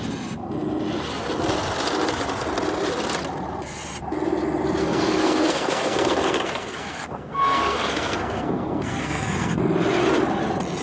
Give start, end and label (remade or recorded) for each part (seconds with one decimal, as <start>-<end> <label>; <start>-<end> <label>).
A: 0.0-4.8 recorded; 4.8-9.6 remade; 9.6-10.8 recorded